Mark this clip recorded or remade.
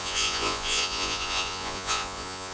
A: remade